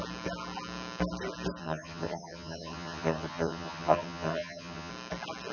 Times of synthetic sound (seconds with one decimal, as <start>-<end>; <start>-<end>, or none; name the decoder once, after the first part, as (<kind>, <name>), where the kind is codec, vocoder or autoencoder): 1.6-4.9 (vocoder, HiFi-GAN)